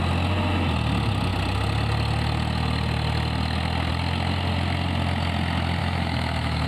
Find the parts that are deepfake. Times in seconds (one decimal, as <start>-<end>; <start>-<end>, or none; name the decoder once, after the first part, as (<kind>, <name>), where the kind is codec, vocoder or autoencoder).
5.8-6.7 (autoencoder, DAC-VAE)